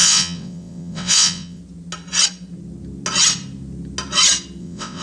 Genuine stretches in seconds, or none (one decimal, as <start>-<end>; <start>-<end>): 1.6-4.6